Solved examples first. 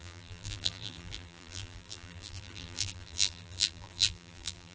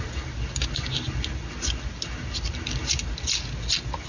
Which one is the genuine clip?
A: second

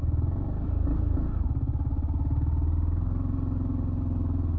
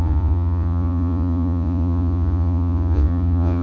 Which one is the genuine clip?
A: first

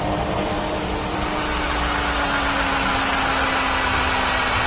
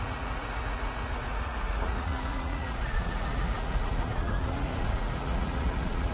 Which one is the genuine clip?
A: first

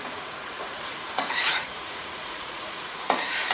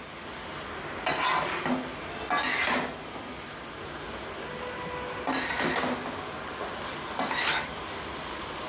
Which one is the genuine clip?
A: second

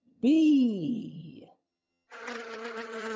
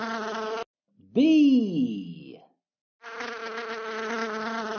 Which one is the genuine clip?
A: second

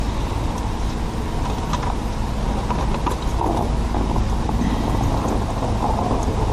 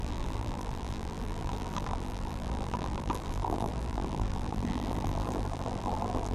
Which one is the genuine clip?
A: first